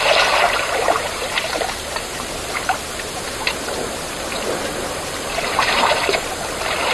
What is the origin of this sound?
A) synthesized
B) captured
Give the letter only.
A